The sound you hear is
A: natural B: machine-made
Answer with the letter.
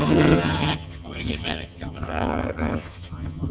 B